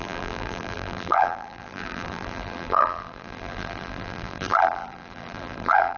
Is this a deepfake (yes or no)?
yes